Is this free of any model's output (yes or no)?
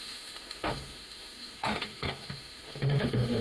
no